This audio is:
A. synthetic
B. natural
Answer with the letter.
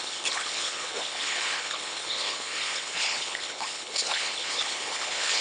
A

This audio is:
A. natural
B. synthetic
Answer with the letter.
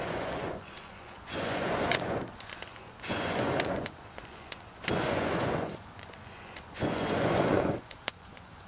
B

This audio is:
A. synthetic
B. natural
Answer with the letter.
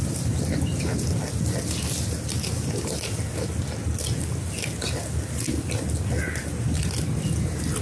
B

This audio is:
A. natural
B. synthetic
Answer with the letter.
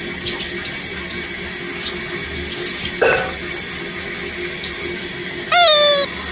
A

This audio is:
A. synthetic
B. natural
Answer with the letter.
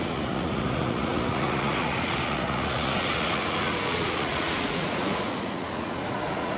A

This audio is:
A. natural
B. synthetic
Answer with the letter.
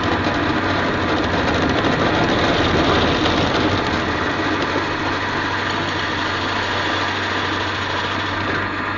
A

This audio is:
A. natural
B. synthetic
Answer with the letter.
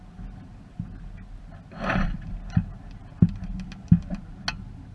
A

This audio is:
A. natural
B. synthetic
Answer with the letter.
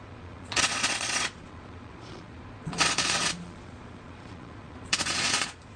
B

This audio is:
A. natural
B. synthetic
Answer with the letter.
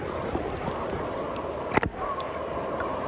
A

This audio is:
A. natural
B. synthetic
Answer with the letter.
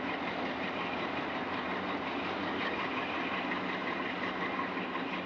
A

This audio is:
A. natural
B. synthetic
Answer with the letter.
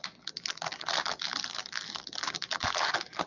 A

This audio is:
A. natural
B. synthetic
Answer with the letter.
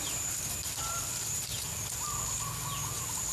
A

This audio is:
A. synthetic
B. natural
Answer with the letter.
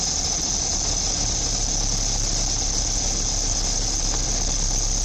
B